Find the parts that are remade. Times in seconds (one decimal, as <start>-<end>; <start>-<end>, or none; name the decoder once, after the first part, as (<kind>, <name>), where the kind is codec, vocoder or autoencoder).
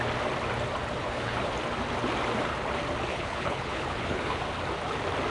1.0-1.5 (codec, HILCodec); 3.1-4.4